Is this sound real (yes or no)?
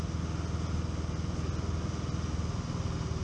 yes